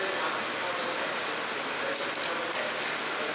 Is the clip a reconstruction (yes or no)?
no